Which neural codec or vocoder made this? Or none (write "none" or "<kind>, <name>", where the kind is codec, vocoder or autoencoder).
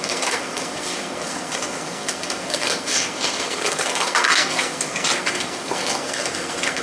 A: codec, SNAC